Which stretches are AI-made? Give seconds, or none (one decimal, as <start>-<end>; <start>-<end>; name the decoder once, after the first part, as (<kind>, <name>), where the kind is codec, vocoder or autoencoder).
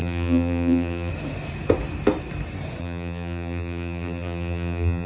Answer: 0.0-1.1 (vocoder, BigVGAN v2); 2.8-5.1